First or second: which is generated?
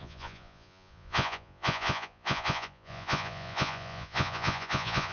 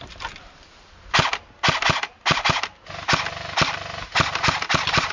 first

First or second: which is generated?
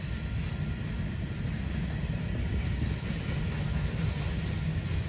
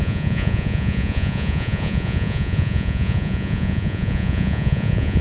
second